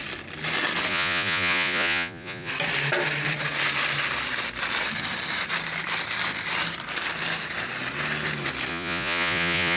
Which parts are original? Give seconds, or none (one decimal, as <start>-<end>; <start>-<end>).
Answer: 0.0-0.9; 2.5-8.7